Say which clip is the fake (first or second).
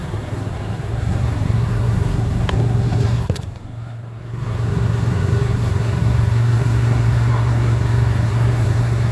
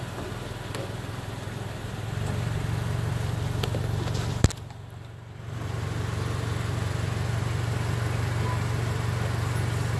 first